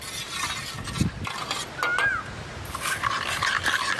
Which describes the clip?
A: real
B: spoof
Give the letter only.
A